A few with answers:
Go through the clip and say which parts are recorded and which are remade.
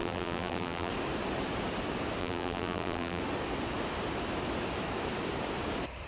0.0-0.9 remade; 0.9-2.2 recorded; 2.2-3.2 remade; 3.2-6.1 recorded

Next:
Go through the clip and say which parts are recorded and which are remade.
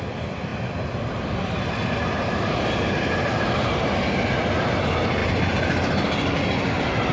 0.0-7.1 recorded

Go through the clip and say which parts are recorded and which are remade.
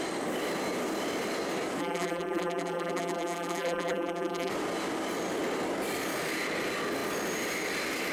0.0-1.8 recorded; 1.8-4.5 remade; 4.5-8.1 recorded